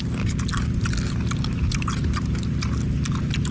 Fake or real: real